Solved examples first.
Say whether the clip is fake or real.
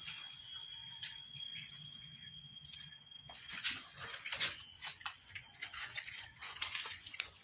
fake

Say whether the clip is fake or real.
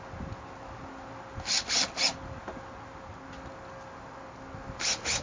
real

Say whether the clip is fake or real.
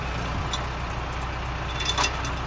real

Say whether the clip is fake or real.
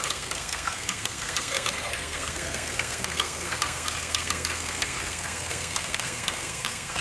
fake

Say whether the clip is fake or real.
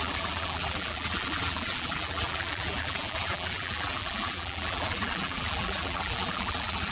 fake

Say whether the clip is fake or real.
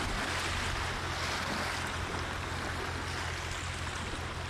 real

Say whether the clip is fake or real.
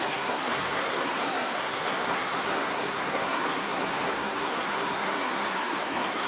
fake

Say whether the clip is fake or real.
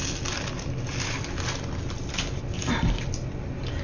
real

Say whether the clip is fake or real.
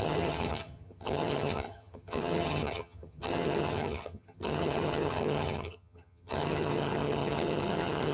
fake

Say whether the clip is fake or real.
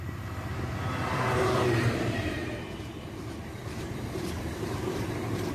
fake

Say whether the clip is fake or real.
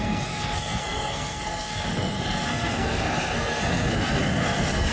fake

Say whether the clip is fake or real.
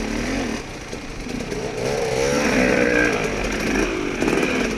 real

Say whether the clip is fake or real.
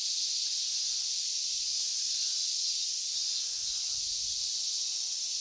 real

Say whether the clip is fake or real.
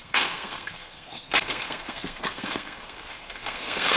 fake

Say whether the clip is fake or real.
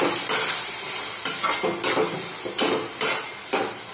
real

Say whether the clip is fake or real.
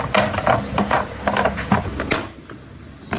real